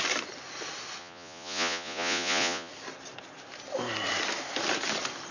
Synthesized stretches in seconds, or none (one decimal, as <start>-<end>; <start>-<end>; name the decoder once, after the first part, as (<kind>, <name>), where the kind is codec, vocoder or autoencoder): 1.0-2.7 (vocoder, Vocos)